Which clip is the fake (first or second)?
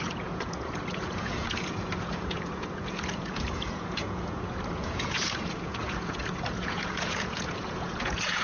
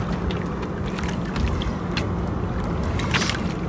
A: first